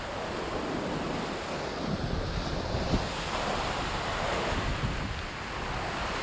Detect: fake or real real